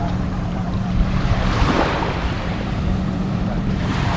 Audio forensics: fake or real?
fake